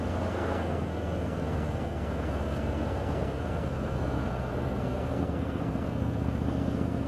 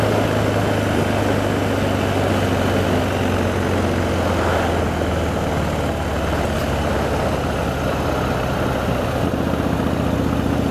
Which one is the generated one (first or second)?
first